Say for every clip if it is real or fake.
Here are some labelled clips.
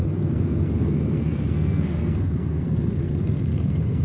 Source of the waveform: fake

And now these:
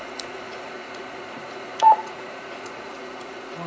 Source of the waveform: fake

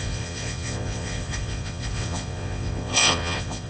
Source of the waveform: fake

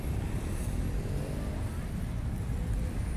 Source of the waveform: real